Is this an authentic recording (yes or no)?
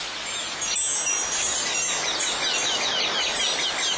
yes